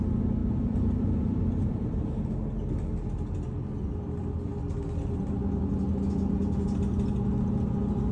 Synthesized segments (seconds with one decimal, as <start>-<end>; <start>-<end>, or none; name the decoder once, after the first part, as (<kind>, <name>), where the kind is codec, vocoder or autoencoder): 0.4-2.2 (vocoder, BigVGAN v2)